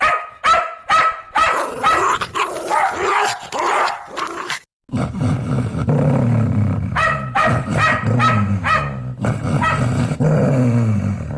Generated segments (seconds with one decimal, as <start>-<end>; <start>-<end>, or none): none